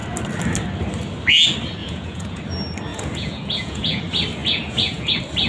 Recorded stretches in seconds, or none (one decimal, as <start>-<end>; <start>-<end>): 0.0-1.8; 2.4-2.9; 4.0-4.4; 5.1-5.5